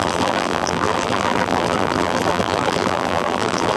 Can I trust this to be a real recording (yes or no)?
no